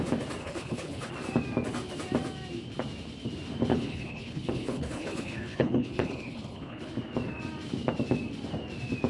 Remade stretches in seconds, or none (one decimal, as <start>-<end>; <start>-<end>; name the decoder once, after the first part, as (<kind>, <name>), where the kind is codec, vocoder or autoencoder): 0.4-1.1 (codec, HILCodec); 3.7-6.9

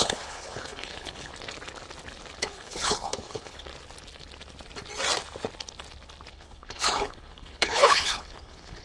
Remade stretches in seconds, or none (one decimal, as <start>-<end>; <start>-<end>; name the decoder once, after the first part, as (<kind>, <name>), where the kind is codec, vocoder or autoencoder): 0.0-1.3 (codec, HILCodec); 2.4-3.7; 6.3-8.8

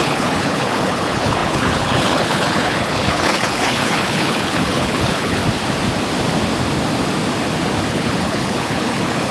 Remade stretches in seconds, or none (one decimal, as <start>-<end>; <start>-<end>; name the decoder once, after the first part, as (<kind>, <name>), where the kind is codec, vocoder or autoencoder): 0.0-5.4 (codec, HILCodec); 7.9-9.3

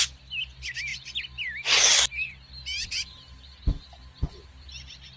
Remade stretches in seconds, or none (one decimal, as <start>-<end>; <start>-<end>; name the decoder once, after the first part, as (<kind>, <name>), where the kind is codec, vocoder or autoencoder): none